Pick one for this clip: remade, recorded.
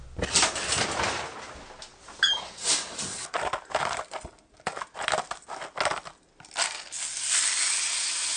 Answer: recorded